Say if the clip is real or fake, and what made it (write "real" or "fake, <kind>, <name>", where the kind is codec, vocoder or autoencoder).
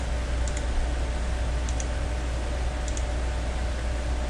real